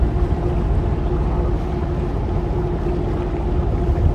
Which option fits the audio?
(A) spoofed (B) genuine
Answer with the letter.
B